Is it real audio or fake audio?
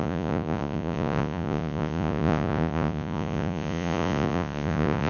fake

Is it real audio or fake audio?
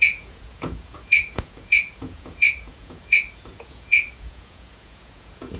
fake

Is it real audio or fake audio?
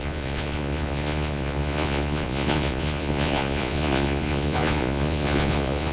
fake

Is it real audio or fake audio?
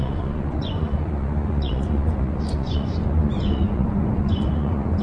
fake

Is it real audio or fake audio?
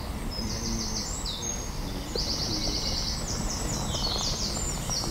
real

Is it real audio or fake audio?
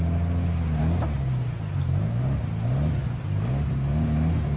real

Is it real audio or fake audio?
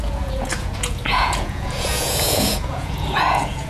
fake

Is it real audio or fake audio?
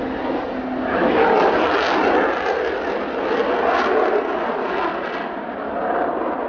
real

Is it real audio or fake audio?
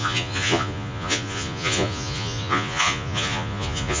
fake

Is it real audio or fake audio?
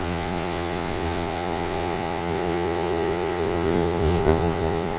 fake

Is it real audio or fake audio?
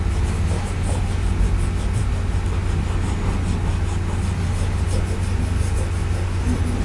real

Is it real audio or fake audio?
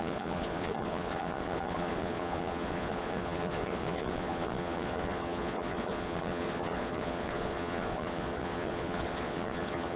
fake